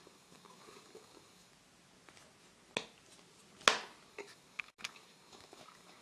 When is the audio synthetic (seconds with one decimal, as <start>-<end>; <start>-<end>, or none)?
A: 0.0-1.5; 4.1-6.0